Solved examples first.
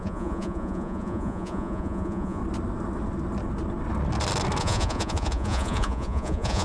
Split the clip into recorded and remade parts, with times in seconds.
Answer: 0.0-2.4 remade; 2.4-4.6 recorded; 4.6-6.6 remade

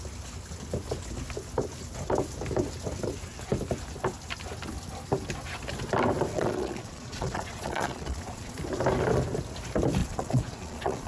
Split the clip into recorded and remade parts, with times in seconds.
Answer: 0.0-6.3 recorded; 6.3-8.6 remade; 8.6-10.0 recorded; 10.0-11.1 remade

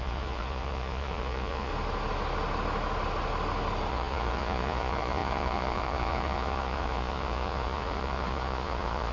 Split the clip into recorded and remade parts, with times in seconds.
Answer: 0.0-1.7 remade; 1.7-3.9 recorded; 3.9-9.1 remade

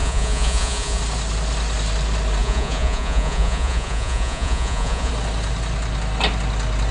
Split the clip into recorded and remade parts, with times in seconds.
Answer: 0.0-1.0 remade; 1.0-2.4 recorded; 2.4-5.1 remade; 5.1-6.9 recorded

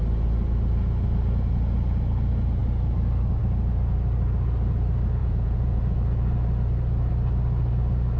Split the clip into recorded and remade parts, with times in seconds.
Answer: 0.0-5.2 recorded; 5.2-5.8 remade; 5.8-8.2 recorded

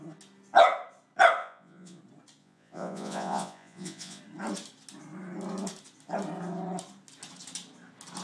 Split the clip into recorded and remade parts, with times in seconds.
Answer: 0.0-1.4 recorded; 1.4-2.0 remade; 2.0-2.4 recorded; 2.4-4.2 remade; 4.2-8.2 recorded